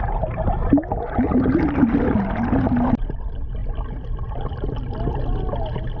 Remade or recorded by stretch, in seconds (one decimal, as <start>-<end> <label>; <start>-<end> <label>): 0.0-6.0 recorded